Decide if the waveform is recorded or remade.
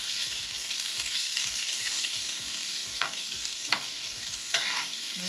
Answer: remade